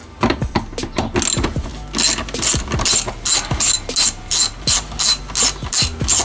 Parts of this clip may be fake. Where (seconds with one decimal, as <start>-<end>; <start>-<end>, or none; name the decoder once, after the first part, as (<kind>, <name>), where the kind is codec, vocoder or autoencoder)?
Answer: 0.0-0.5 (vocoder, BigVGAN v2)